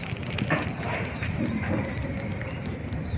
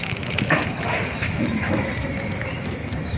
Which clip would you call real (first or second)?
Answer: first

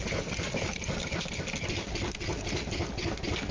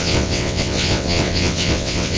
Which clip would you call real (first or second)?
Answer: first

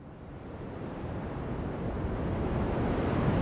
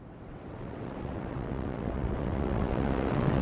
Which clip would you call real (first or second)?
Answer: first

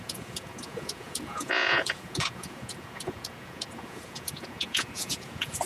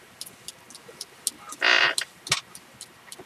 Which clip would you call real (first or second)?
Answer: second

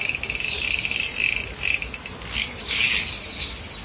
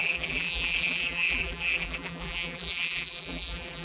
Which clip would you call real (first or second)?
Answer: first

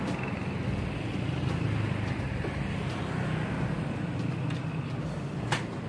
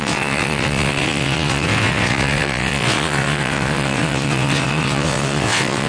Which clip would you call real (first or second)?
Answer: first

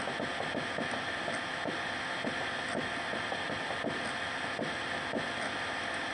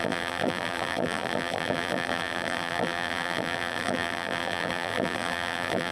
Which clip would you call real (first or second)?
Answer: first